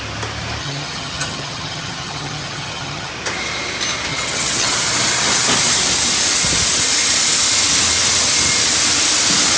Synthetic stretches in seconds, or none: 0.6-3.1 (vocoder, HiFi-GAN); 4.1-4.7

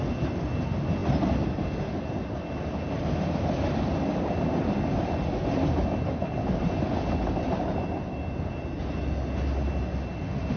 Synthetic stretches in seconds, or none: none

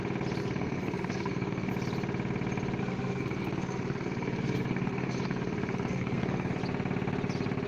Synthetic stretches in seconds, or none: 0.4-1.7 (codec, SNAC); 2.8-6.6

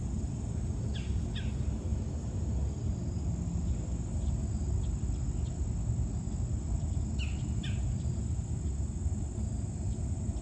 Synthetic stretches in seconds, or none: none

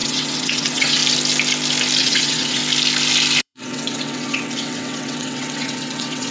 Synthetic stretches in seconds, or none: 0.0-1.0 (vocoder, WaveNeXt); 2.0-2.6; 3.4-6.3

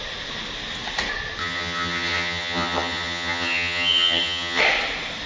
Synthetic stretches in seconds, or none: 1.4-4.6 (vocoder, HiFi-GAN)

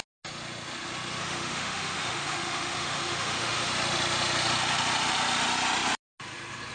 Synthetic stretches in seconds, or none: 1.2-3.7 (autoencoder, DAC-VAE)

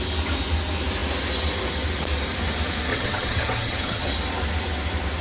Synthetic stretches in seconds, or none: 2.9-4.1 (vocoder, HiFi-GAN)